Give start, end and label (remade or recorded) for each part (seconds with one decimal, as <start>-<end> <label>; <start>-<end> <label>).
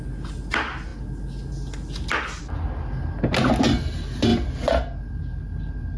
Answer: 0.0-6.0 recorded